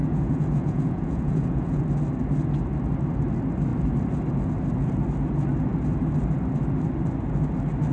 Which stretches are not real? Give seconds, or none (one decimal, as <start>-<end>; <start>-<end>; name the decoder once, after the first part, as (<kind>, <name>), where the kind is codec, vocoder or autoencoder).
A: 0.0-1.8 (vocoder, Vocos)